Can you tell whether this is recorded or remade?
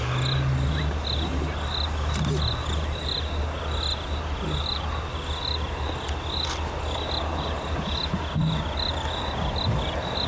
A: recorded